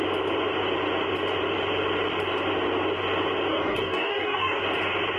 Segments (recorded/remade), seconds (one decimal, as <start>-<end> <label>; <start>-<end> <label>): 0.0-3.5 recorded; 3.5-4.6 remade; 4.6-5.2 recorded